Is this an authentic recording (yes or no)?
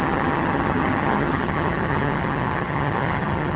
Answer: no